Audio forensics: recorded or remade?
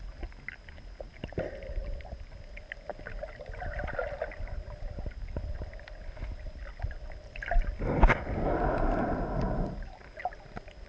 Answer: recorded